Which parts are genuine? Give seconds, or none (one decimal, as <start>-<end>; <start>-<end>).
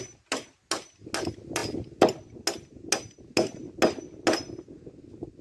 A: 0.0-5.4